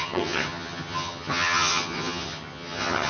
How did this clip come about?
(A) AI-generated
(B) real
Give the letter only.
A